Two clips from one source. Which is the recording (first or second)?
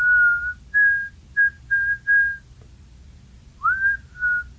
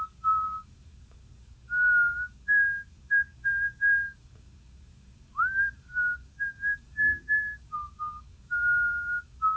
first